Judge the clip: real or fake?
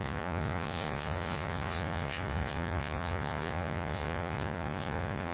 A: fake